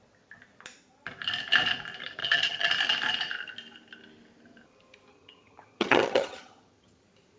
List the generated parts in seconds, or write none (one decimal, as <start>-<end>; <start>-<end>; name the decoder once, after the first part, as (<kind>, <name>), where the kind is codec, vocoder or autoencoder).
2.2-2.7 (vocoder, HiFi-GAN); 5.1-7.0